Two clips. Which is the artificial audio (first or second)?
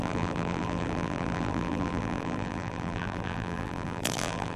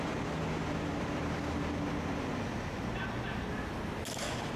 first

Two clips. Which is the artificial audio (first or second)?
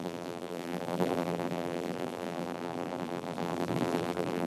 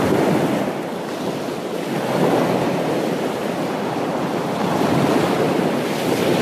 first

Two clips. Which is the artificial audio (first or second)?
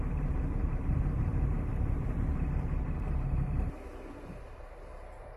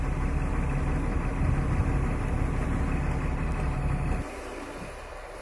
first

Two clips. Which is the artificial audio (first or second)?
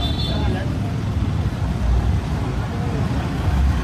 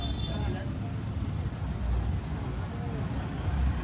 first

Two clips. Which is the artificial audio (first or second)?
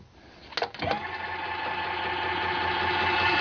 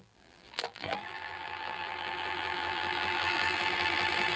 second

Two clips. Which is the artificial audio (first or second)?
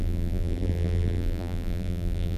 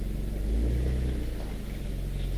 first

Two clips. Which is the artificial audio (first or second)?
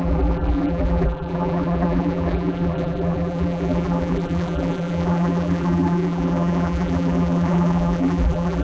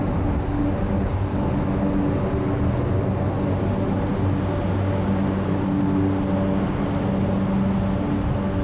first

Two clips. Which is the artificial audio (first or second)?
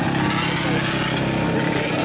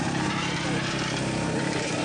second